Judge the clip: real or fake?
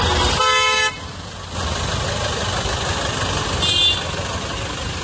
real